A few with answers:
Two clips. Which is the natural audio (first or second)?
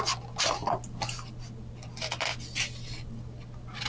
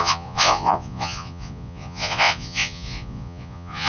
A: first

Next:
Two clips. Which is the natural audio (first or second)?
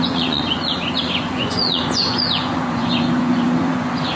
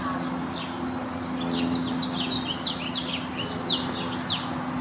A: second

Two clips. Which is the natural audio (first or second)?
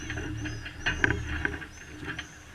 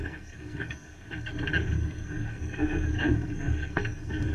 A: first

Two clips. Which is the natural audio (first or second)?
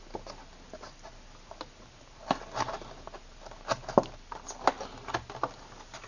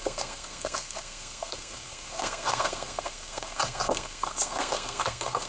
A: first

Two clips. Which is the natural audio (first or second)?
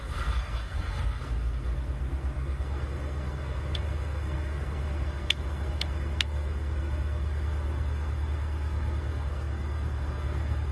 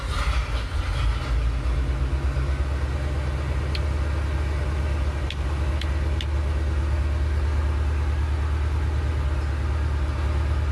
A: second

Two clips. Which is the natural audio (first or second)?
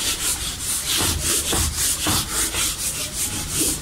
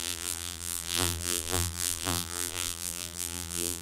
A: first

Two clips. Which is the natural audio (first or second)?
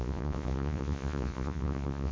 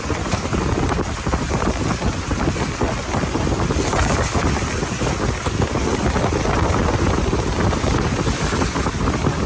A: second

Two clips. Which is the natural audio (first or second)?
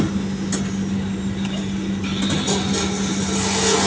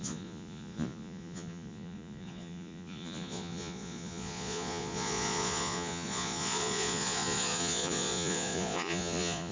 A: first